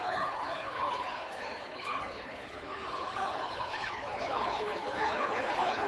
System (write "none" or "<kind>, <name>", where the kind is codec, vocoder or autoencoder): codec, HILCodec